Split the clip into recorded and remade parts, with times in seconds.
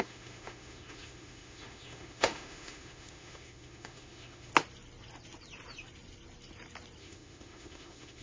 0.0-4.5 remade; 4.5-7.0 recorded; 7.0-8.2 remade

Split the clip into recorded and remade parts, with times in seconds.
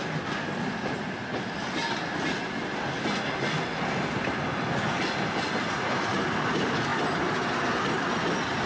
0.0-8.7 recorded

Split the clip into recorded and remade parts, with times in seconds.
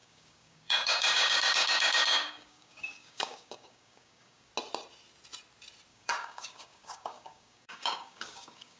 0.0-4.5 remade; 4.5-5.9 recorded; 5.9-8.8 remade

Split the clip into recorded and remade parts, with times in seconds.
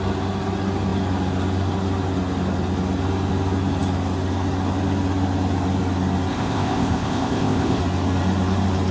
0.0-6.3 recorded; 6.3-7.8 remade; 7.8-8.9 recorded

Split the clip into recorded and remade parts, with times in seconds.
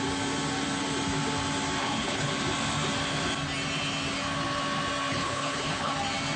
0.0-1.8 recorded; 1.8-2.3 remade; 2.3-5.1 recorded; 5.1-5.9 remade; 5.9-6.4 recorded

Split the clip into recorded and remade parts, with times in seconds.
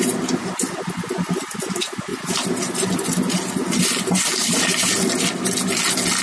0.0-6.2 recorded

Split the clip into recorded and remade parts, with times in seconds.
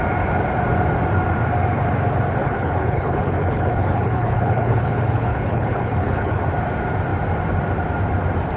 0.0-2.4 recorded; 2.4-6.4 remade; 6.4-8.6 recorded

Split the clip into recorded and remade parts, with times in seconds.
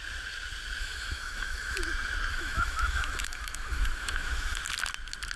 0.0-0.8 recorded; 0.8-1.8 remade; 1.8-2.3 recorded; 2.3-4.6 remade; 4.6-5.4 recorded